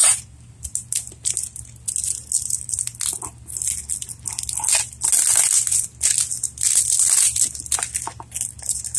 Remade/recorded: recorded